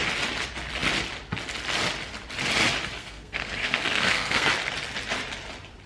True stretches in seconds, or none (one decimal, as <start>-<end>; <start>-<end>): 0.0-3.0; 4.5-5.9